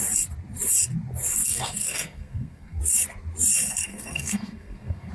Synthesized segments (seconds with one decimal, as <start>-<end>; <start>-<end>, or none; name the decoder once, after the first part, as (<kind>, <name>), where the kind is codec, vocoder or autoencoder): 1.4-2.8 (codec, SNAC); 3.9-5.1